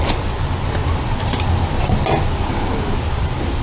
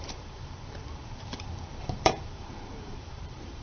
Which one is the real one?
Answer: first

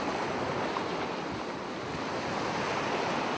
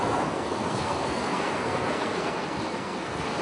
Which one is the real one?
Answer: first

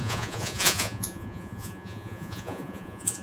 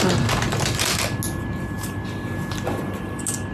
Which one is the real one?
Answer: second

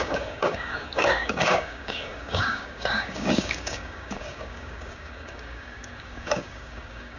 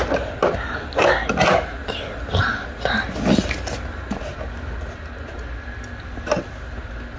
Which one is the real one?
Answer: second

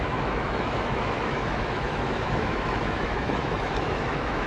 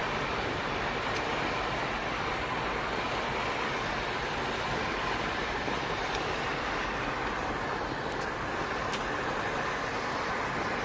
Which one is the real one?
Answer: second